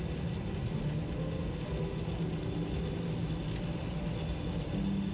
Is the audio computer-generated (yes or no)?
no